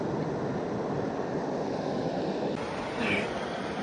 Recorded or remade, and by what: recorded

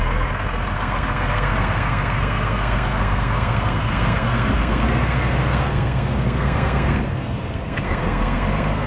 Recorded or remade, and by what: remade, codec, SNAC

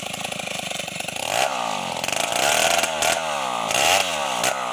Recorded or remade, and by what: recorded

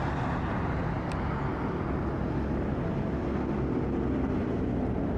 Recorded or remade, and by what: recorded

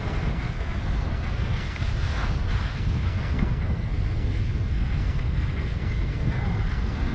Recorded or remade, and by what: remade, codec, SNAC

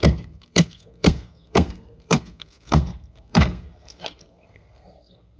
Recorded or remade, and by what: remade, codec, SNAC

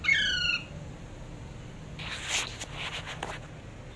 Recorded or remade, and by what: recorded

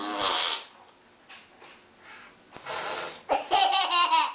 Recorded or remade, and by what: recorded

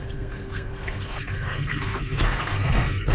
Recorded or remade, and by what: remade, codec, SNAC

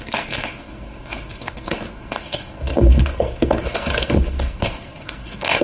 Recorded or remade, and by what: remade, codec, SNAC